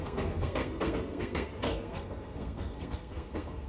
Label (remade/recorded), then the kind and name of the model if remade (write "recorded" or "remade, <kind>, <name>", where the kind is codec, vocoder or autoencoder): remade, codec, SNAC